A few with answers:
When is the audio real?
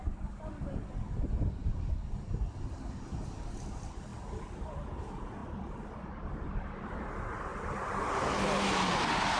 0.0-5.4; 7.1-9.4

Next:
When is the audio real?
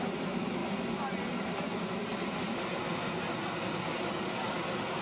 0.0-5.0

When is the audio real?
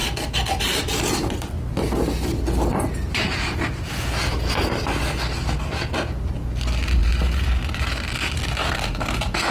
0.0-2.7; 3.9-7.0; 7.6-9.5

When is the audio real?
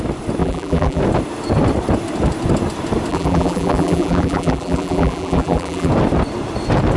0.0-0.4; 1.0-3.1; 5.9-7.0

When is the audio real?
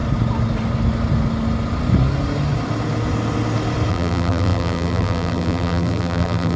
0.0-3.9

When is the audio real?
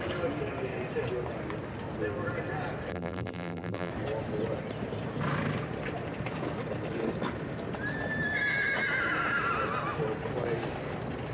0.0-2.9; 3.9-11.3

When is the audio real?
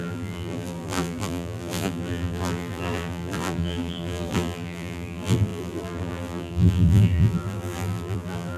none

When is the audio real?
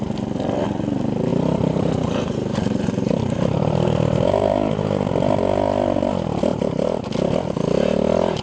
0.0-1.3; 5.1-6.5; 7.0-8.4